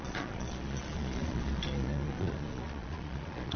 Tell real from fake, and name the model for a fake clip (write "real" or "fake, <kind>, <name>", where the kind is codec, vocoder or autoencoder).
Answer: fake, vocoder, Vocos